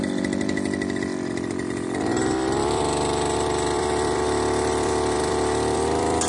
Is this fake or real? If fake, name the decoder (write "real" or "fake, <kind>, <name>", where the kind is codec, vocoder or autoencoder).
fake, vocoder, BigVGAN v2